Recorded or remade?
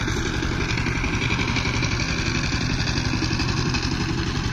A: recorded